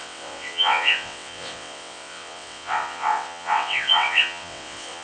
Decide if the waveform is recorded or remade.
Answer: remade